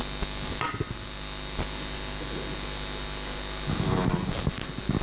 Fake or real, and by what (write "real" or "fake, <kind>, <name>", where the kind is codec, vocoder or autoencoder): real